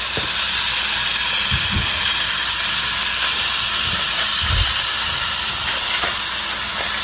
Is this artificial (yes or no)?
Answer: no